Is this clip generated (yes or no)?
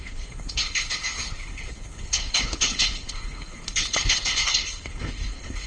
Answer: yes